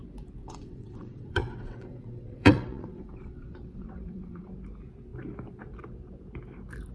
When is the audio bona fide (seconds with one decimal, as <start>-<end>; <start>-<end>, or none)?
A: 0.0-0.4; 4.5-6.9